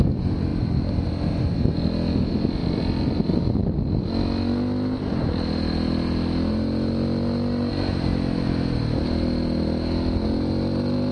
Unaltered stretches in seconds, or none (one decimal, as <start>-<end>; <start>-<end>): 0.0-11.1